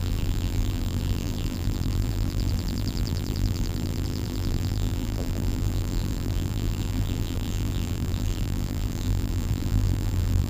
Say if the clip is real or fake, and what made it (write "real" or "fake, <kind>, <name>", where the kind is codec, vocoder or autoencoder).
fake, vocoder, BigVGAN v2